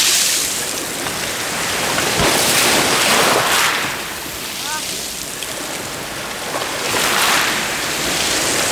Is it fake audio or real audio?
real